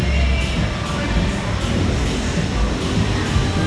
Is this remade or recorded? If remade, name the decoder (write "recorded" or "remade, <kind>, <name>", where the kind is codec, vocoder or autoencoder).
recorded